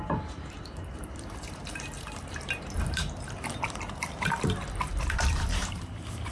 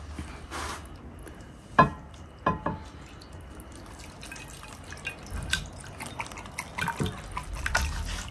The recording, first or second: second